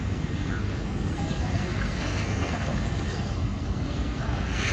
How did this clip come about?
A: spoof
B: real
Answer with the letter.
A